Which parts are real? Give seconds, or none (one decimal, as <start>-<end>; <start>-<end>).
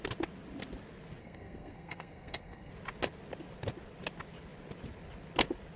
0.0-1.2; 2.7-5.8